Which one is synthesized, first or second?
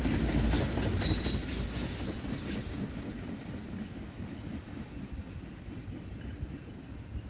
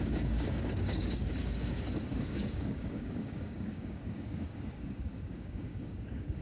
second